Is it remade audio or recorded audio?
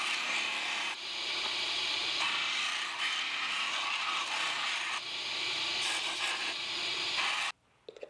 recorded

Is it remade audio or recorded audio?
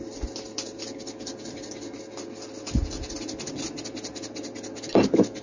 recorded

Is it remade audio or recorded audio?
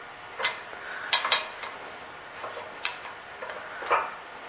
recorded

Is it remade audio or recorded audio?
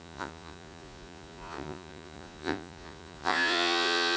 remade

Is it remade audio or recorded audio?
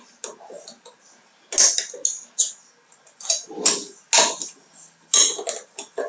recorded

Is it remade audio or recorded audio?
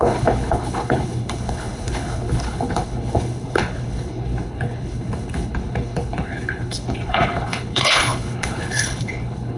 remade